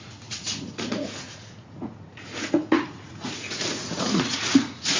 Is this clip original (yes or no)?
no